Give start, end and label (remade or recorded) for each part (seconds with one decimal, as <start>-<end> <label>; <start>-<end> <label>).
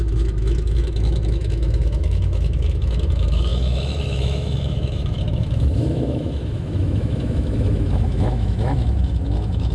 0.0-9.7 remade